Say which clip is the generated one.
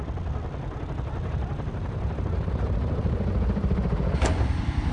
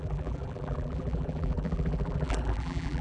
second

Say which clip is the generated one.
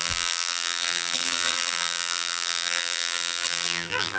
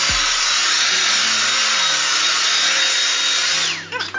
first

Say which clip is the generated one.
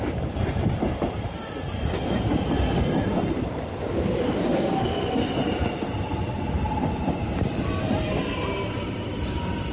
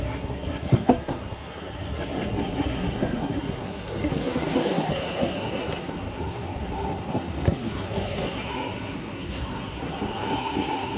second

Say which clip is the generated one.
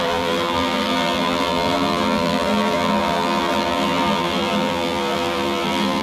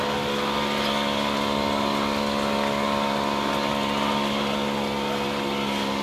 first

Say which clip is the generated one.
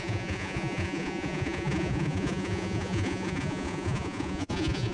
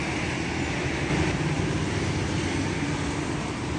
first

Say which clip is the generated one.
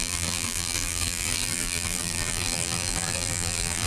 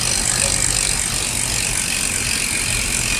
first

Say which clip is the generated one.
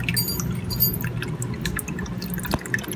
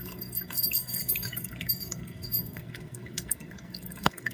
second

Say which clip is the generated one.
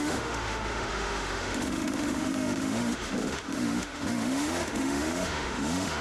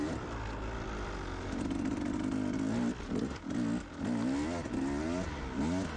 first